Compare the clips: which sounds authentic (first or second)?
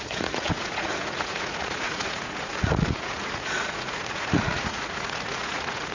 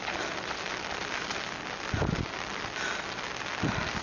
second